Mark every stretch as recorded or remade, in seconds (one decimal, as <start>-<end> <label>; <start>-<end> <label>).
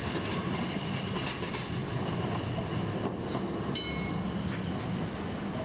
0.0-5.6 recorded